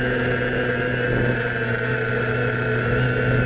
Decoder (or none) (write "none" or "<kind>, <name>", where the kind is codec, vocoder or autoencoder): none